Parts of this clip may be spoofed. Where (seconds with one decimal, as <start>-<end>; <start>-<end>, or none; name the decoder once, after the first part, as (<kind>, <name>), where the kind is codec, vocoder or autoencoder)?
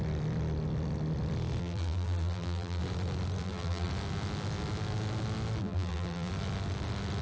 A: 1.6-2.8 (vocoder, BigVGAN v2); 3.4-3.9; 5.6-6.3